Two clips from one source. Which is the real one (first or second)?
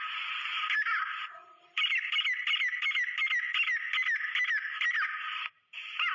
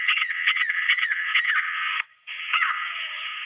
first